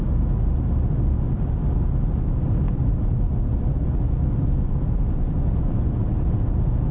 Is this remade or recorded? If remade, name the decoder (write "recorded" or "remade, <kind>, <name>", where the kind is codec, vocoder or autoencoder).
recorded